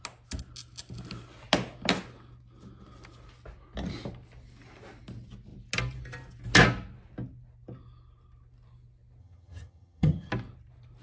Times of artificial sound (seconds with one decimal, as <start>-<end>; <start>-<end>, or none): 9.2-10.3